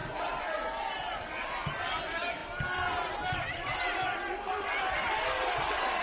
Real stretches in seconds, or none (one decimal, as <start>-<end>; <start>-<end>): 0.0-6.0